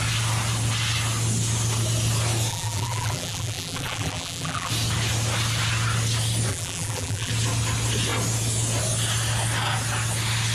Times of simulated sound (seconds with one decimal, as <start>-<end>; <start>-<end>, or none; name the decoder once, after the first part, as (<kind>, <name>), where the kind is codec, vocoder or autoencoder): 2.5-4.7 (vocoder, BigVGAN v2); 6.5-7.3